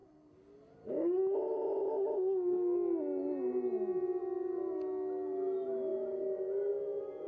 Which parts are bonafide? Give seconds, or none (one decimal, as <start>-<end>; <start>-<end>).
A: 0.0-7.3